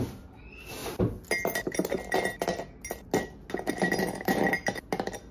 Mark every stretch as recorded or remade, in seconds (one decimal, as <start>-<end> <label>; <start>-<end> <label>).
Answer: 0.0-5.3 recorded